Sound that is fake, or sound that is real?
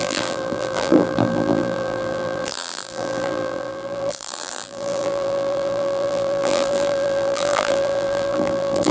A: fake